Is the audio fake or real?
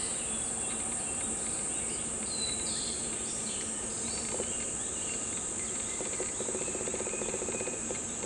fake